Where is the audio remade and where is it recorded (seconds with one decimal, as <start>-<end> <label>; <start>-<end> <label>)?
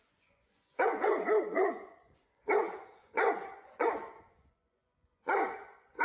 0.0-6.0 remade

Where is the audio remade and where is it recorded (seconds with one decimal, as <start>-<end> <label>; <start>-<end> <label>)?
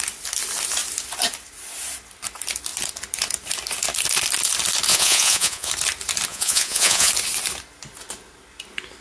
0.0-4.9 recorded; 4.9-5.7 remade; 5.7-6.3 recorded; 6.3-7.1 remade; 7.1-9.0 recorded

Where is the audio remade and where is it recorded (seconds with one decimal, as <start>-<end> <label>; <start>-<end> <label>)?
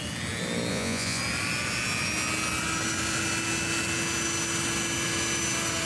0.0-0.7 recorded; 0.7-1.2 remade; 1.2-5.9 recorded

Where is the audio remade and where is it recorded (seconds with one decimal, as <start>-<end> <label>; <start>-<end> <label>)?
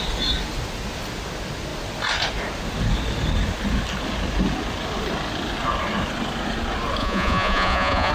0.0-7.0 recorded; 7.0-8.1 remade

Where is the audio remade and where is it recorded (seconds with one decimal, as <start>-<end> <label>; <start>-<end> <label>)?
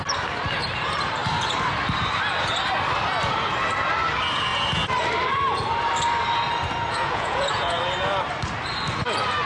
0.0-6.9 recorded; 6.9-7.8 remade; 7.8-9.5 recorded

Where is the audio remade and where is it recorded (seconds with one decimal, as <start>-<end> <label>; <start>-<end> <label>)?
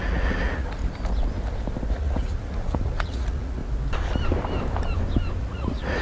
0.0-0.8 remade; 0.8-1.9 recorded; 1.9-3.6 remade; 3.6-5.4 recorded; 5.4-6.0 remade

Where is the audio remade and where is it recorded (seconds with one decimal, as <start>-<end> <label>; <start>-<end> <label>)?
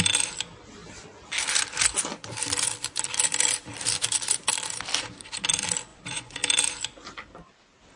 0.0-5.9 recorded; 5.9-6.4 remade; 6.4-8.0 recorded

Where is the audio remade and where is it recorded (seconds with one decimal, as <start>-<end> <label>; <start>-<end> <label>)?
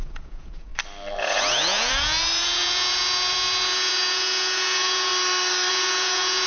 0.0-0.7 remade; 0.7-1.2 recorded; 1.2-5.1 remade; 5.1-5.7 recorded; 5.7-6.5 remade